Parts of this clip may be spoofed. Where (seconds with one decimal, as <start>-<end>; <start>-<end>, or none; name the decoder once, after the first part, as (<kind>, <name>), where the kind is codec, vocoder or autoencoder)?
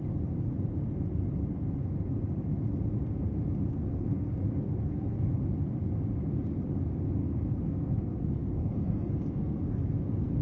3.7-5.3 (codec, SNAC); 7.2-10.4